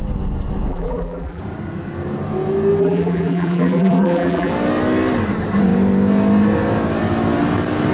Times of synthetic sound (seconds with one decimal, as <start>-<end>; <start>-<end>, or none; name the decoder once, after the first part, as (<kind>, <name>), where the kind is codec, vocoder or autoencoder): 0.7-1.4 (vocoder, BigVGAN v2); 2.8-4.5

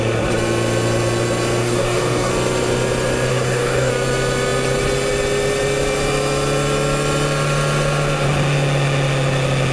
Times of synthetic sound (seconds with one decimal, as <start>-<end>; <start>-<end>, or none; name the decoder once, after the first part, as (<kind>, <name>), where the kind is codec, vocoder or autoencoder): 1.6-2.3 (codec, DAC); 3.3-3.9

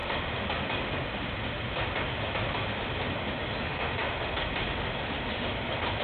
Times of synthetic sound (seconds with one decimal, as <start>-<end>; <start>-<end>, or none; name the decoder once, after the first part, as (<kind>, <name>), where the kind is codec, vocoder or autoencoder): 3.6-4.0 (autoencoder, DAC-VAE)

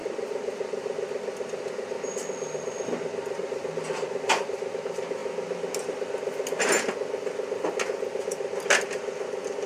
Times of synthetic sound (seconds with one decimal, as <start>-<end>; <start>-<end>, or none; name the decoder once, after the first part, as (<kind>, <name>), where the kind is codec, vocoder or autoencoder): none

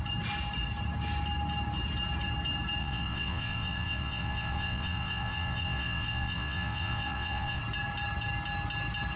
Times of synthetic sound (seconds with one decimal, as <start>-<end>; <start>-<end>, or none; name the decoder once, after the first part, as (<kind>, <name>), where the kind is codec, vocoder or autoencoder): 2.8-7.6 (vocoder, WaveNeXt)